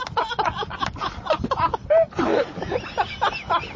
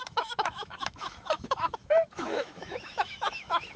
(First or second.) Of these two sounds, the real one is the first